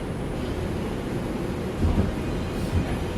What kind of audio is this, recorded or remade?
recorded